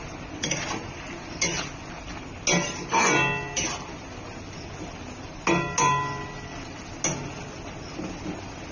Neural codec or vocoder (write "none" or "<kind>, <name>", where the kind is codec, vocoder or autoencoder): none